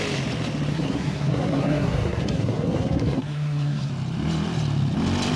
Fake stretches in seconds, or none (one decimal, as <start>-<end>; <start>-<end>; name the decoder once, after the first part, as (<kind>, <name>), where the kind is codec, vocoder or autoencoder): 0.7-3.9 (codec, SNAC)